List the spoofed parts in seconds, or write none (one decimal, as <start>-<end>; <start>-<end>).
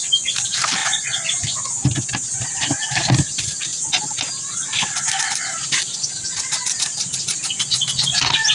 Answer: 0.0-0.8; 2.5-3.7; 8.1-8.5